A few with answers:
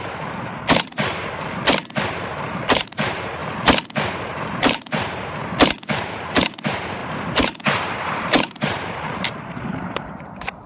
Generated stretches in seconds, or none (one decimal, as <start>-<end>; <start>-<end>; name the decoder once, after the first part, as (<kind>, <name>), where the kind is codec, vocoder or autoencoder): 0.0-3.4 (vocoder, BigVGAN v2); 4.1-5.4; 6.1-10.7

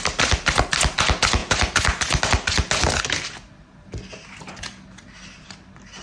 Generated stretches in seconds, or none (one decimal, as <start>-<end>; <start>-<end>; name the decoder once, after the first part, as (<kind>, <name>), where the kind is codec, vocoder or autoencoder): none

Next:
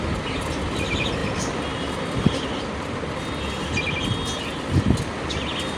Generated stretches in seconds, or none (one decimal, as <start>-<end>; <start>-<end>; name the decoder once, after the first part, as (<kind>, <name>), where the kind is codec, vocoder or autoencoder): none

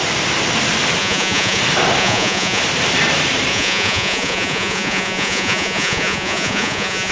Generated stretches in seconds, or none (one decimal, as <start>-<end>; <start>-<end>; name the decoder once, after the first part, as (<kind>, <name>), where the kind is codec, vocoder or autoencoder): 1.0-1.6 (vocoder, Vocos); 2.0-2.6; 3.5-7.1